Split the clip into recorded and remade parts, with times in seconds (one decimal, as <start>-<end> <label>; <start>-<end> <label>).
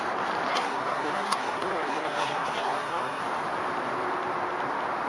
0.0-0.5 recorded; 0.5-3.2 remade; 3.2-5.1 recorded